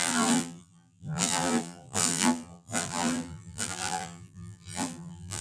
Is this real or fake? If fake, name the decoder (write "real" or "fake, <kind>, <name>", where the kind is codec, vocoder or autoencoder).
fake, vocoder, BigVGAN v2